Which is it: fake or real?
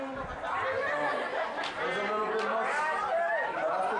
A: real